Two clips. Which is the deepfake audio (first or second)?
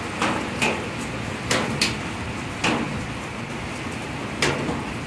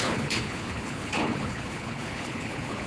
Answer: second